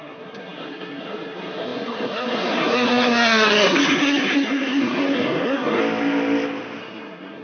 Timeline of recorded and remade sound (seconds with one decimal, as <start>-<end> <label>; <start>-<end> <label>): 0.0-5.8 remade; 5.8-6.8 recorded; 6.8-7.4 remade